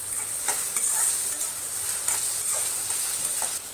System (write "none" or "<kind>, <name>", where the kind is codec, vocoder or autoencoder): none